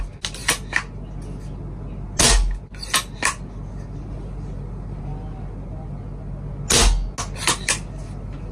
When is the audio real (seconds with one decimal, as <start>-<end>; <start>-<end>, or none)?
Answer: 0.0-8.5